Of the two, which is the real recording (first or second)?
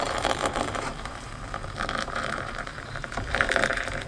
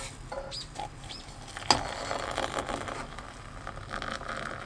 second